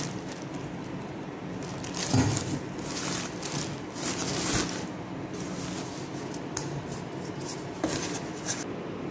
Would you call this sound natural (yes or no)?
yes